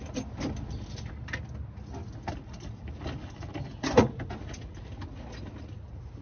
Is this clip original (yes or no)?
yes